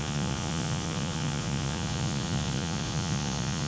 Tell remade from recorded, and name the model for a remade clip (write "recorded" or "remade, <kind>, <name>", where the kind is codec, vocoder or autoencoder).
remade, vocoder, Vocos